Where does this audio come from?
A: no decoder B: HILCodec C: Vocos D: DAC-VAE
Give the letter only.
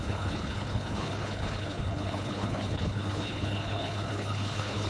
B